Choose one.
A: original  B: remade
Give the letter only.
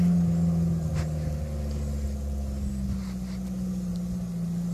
A